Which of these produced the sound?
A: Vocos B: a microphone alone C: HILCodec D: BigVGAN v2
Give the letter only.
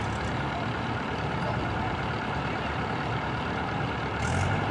B